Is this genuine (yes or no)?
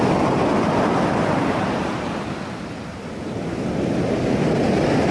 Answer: yes